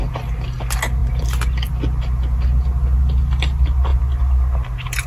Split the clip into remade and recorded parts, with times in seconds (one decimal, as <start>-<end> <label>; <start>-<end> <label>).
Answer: 0.0-5.1 recorded